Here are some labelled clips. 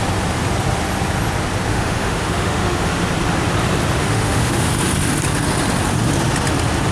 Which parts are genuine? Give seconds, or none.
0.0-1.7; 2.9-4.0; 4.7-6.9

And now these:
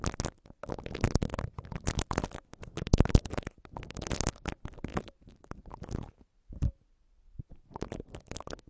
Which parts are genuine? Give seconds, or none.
0.0-2.9; 3.5-4.9; 6.2-8.7

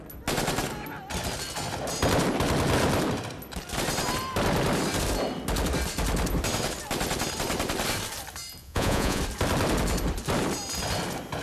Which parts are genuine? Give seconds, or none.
0.0-8.6; 9.2-11.4